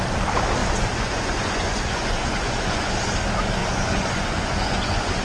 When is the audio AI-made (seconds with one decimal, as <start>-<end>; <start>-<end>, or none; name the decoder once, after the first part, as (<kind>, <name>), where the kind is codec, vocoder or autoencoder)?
0.6-2.9 (vocoder, Vocos); 3.6-5.2